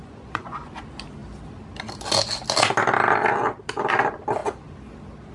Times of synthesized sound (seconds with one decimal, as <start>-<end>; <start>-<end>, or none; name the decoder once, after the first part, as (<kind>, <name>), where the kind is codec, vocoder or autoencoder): 0.0-0.7 (vocoder, Vocos)